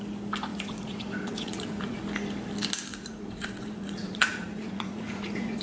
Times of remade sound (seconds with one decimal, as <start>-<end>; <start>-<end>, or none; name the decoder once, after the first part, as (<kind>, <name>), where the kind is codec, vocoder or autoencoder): 0.5-2.0 (vocoder, Vocos); 2.9-5.6